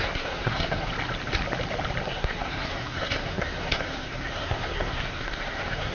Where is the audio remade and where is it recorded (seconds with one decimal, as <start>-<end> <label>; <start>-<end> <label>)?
0.0-0.9 remade; 0.9-2.0 recorded; 2.0-5.9 remade